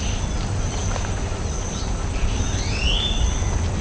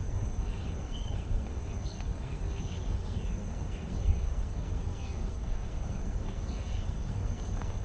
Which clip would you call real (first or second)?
first